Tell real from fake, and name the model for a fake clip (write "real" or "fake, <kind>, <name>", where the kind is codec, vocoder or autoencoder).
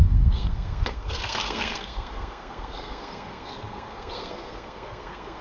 fake, codec, SNAC